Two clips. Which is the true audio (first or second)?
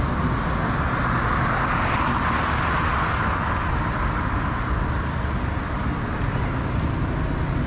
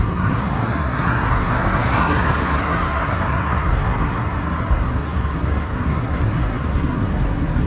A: first